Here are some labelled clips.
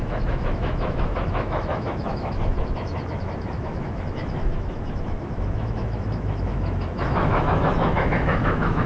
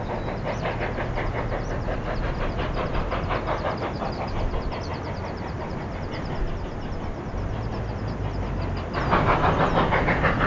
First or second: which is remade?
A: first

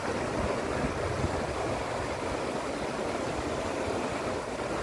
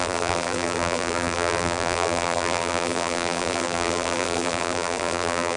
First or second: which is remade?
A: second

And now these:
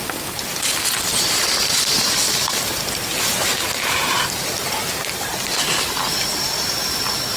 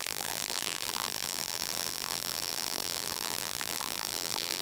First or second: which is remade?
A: second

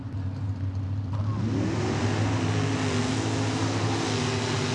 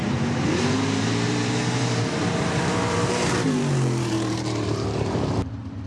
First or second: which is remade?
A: second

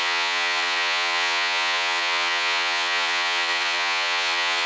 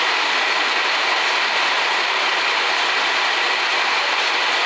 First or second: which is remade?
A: first